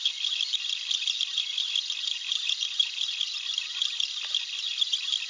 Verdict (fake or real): real